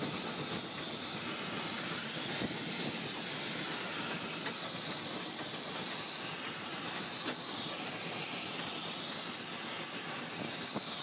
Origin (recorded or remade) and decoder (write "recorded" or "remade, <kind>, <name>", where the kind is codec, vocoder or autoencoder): recorded